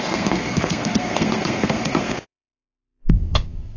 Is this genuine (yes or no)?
no